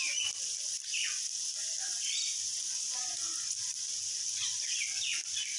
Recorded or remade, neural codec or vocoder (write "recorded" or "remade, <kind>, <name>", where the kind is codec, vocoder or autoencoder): recorded